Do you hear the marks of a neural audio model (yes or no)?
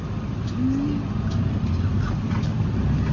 no